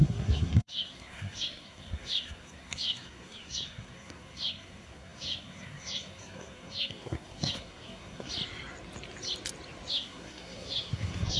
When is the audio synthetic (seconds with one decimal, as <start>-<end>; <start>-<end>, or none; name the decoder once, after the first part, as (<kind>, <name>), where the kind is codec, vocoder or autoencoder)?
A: 0.0-8.3 (codec, SNAC); 9.9-11.4